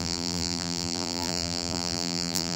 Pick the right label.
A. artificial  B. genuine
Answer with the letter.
A